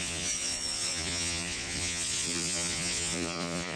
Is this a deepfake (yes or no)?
yes